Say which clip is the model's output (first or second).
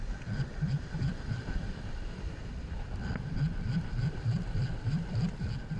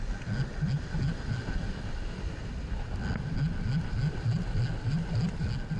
first